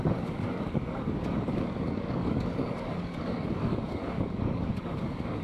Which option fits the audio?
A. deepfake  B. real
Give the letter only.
A